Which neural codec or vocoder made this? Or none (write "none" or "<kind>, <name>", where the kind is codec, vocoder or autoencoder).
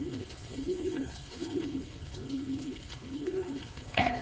codec, HILCodec